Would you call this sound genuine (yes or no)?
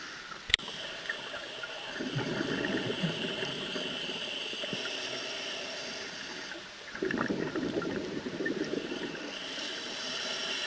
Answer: no